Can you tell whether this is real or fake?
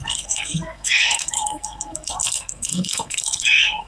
fake